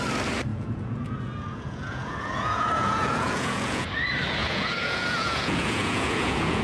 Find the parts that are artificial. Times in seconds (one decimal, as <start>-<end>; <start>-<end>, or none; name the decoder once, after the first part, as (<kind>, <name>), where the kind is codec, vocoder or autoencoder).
0.5-3.9 (vocoder, Vocos); 4.4-6.6